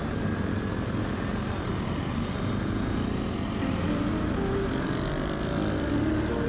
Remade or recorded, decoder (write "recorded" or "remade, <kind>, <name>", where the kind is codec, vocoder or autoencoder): recorded